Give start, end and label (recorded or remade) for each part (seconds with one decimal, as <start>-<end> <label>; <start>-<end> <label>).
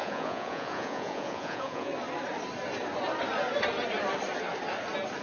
0.0-1.9 remade; 1.9-5.2 recorded